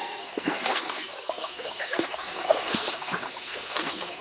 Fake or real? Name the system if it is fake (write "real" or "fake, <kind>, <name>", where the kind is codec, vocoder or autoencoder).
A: fake, codec, SNAC